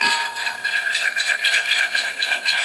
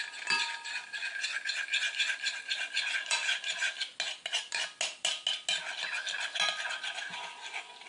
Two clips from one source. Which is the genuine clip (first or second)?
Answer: second